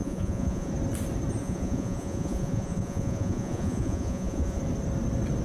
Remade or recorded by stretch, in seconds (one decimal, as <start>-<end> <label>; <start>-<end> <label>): 0.0-0.7 remade; 0.7-1.4 recorded; 1.4-4.6 remade; 4.6-5.4 recorded